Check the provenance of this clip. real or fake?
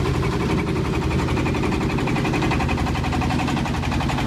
real